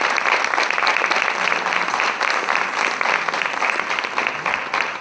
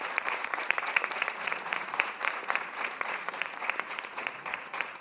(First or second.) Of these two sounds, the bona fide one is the first